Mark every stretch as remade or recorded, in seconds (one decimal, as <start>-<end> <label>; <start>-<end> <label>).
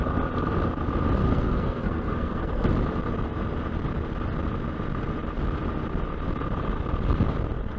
0.0-1.2 recorded; 1.2-2.7 remade; 2.7-7.8 recorded